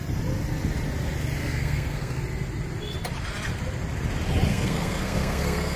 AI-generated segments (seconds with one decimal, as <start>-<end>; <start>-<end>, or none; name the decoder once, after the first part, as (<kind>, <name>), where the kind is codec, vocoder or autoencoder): 1.4-2.2 (codec, SNAC); 4.5-5.8